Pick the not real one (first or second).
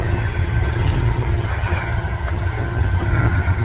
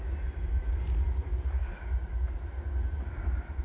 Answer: first